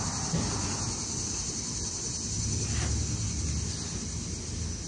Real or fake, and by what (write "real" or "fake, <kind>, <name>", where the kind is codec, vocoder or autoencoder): real